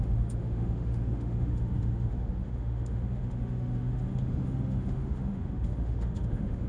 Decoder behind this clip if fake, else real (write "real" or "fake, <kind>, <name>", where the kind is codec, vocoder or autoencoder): fake, autoencoder, DAC-VAE